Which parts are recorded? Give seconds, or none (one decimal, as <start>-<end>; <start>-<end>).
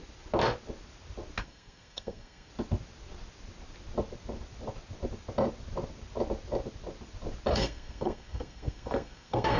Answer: 0.0-1.4; 2.5-7.5